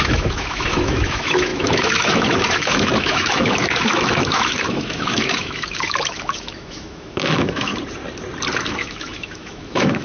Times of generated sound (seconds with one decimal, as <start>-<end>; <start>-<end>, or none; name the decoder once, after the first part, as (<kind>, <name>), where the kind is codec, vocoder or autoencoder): 0.0-7.7 (autoencoder, DAC-VAE); 8.6-10.0